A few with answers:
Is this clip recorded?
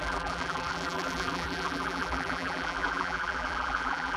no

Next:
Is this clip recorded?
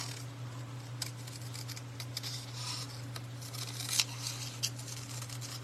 yes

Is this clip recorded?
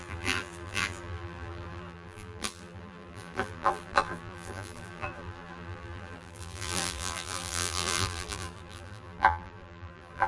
no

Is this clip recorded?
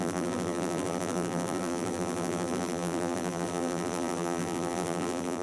no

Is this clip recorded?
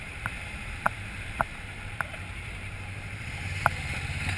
no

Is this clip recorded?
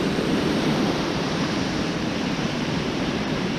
no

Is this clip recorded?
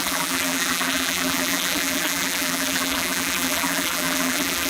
no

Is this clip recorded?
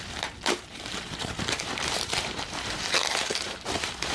no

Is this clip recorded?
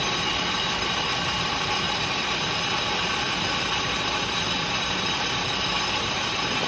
no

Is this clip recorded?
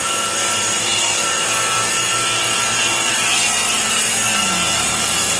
no